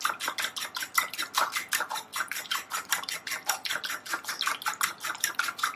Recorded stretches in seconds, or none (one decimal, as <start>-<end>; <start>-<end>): 0.0-2.1; 3.1-5.8